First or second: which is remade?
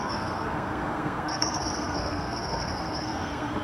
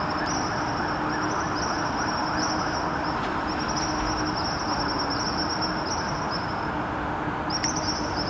first